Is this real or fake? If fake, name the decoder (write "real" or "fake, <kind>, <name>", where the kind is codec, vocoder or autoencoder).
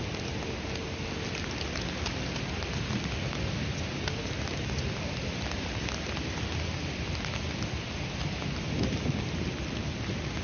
real